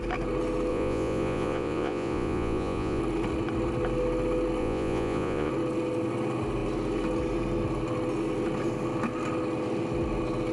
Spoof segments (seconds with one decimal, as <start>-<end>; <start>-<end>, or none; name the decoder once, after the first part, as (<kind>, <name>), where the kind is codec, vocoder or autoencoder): 0.7-3.0 (vocoder, Vocos); 4.6-5.5